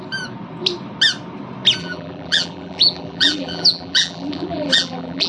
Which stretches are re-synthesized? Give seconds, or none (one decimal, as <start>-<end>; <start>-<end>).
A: 1.8-5.3